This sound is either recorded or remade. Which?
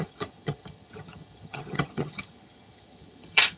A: remade